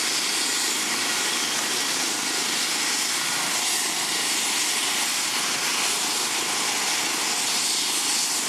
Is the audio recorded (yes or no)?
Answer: yes